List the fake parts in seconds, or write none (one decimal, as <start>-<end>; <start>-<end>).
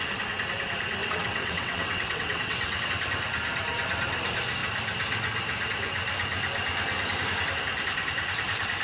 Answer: 1.0-2.9